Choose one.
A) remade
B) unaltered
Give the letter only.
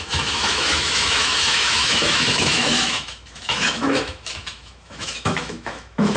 A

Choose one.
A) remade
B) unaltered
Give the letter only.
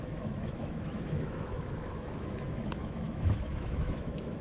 A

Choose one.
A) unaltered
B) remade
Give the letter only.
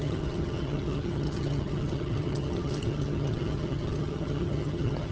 B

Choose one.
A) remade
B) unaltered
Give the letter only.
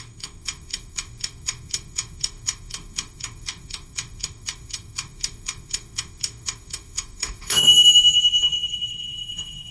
A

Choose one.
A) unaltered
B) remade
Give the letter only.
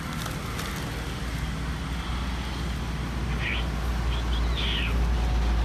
A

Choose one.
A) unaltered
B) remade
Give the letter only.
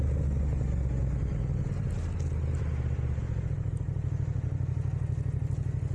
A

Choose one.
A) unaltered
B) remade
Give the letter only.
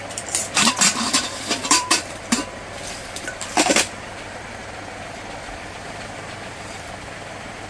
B